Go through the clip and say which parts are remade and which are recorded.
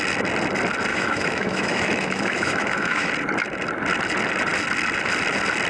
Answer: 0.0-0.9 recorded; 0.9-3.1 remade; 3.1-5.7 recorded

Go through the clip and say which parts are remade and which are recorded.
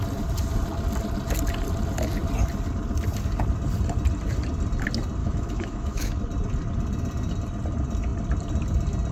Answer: 0.0-5.2 recorded; 5.2-6.2 remade; 6.2-9.1 recorded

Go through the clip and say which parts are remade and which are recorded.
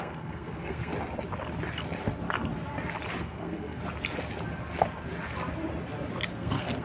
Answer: 0.0-0.9 remade; 0.9-3.2 recorded; 3.2-3.8 remade; 3.8-6.3 recorded; 6.3-6.8 remade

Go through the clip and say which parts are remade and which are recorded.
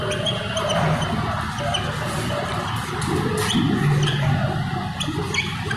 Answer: 0.0-5.8 recorded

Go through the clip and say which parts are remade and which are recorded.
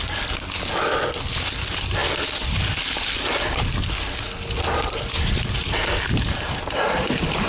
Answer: 0.0-7.5 recorded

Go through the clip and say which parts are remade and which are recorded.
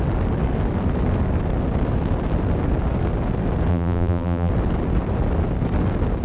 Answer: 0.0-3.7 recorded; 3.7-4.5 remade; 4.5-6.2 recorded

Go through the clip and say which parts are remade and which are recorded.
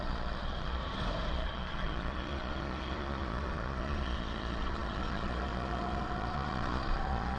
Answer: 0.0-0.8 remade; 0.8-1.3 recorded; 1.3-7.4 remade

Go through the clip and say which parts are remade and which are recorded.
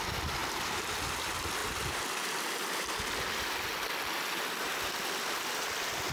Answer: 0.0-0.4 recorded; 0.4-0.9 remade; 0.9-6.1 recorded